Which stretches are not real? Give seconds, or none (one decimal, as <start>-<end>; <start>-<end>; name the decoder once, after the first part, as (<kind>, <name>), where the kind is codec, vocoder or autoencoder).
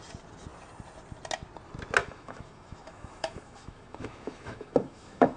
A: 2.0-5.4 (autoencoder, DAC-VAE)